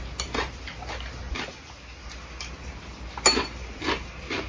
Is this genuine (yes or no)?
yes